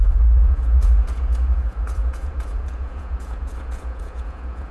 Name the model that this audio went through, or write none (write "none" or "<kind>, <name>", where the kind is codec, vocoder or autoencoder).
vocoder, Vocos